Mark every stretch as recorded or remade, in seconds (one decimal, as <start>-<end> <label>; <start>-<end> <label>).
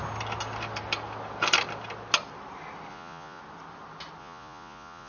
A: 0.0-2.9 recorded; 2.9-3.4 remade; 3.4-4.2 recorded; 4.2-5.1 remade